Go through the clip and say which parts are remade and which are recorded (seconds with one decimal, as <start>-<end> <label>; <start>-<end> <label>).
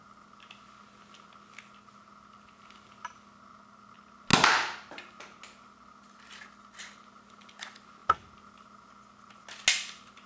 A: 0.0-10.3 recorded